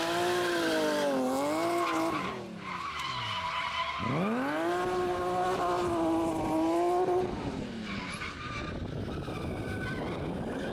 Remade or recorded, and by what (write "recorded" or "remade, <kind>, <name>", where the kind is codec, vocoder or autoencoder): recorded